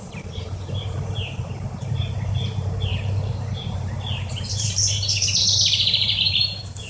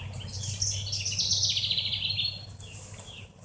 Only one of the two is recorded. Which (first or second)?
second